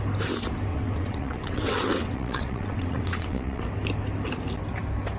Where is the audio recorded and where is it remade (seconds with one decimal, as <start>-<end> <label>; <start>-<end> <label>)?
0.0-0.7 recorded; 0.7-3.6 remade; 3.6-5.2 recorded